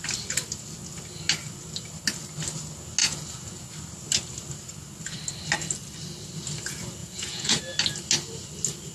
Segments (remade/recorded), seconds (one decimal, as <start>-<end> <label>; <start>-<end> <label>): 0.0-3.0 recorded; 3.0-3.6 remade; 3.6-7.0 recorded; 7.0-7.6 remade; 7.6-8.9 recorded

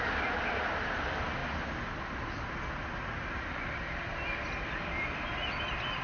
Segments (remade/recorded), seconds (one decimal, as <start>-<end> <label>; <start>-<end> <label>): 0.0-6.0 recorded